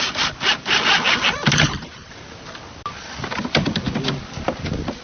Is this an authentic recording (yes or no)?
yes